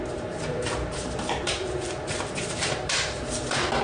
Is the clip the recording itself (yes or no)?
no